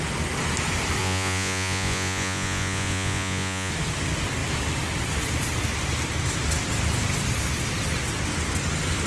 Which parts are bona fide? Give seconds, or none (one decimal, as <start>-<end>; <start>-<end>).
0.0-1.0; 3.7-9.1